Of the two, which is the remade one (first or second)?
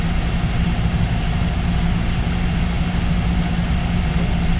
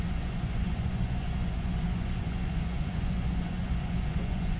second